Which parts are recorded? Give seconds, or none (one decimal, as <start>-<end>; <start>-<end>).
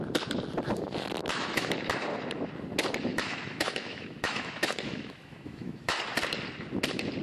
0.0-1.2; 1.7-3.1; 6.0-7.2